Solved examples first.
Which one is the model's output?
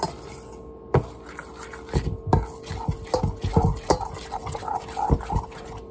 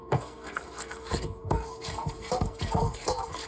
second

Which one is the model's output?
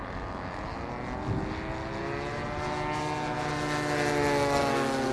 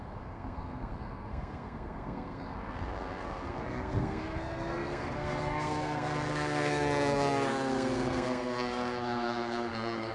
second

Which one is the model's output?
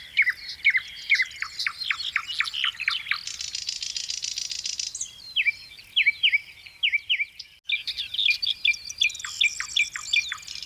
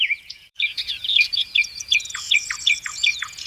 second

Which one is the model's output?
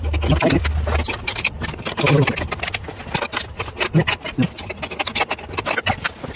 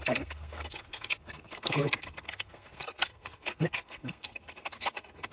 second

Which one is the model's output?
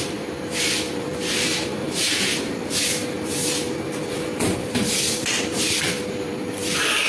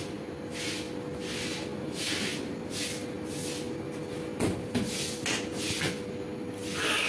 first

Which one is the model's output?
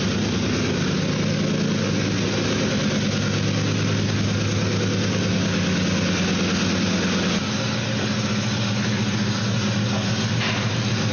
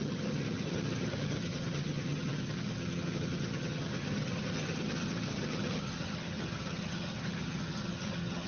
second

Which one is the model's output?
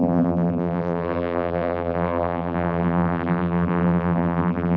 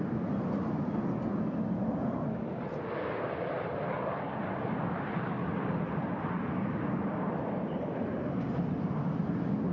first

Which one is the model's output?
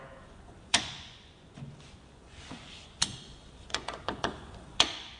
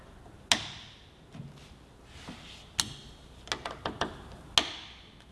first